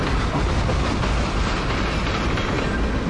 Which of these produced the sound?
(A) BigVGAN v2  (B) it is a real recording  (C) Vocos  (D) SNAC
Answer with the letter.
B